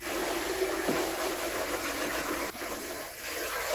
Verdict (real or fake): real